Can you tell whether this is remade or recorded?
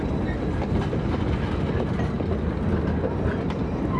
recorded